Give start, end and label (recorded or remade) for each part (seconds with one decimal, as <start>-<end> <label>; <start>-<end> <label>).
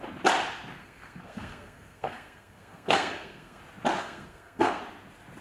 0.0-0.8 recorded; 0.8-3.6 remade; 3.6-4.0 recorded; 4.0-4.8 remade; 4.8-5.4 recorded